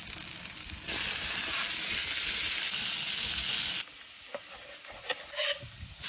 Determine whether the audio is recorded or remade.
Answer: recorded